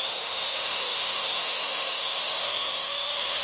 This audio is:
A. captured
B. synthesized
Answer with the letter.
B